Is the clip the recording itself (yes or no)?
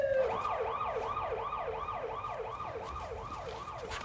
no